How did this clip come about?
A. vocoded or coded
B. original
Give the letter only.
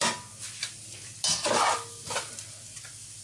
B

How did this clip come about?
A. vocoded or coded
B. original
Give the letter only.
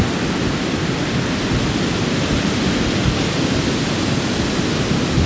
B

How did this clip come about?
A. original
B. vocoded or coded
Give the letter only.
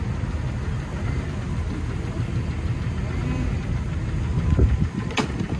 A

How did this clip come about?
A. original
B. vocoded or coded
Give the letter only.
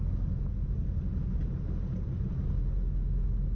A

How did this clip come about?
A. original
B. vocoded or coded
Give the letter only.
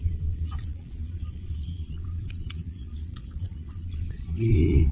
B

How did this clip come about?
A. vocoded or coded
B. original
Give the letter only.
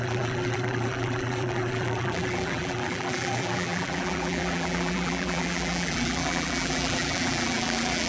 A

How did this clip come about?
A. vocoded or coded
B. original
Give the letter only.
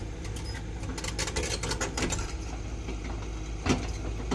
B